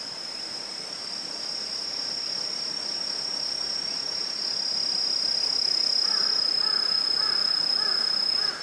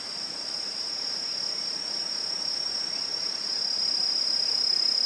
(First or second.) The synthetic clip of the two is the second